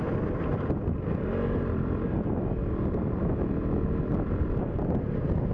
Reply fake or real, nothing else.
real